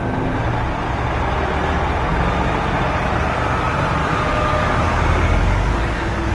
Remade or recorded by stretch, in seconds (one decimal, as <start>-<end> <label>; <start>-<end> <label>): 0.0-4.0 recorded; 4.0-6.3 remade